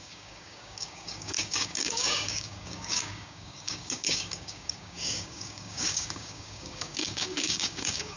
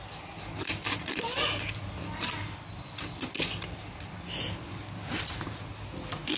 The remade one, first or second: first